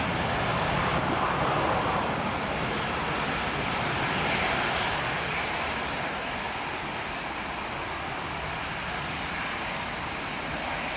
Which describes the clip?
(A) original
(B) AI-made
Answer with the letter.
A